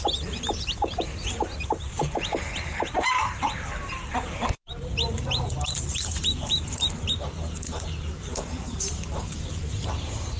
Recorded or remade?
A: remade